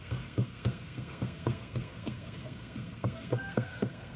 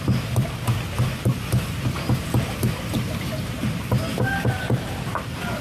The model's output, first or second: first